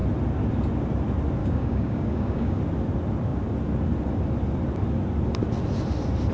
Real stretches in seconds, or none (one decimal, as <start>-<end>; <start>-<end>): 0.0-1.4; 2.6-6.3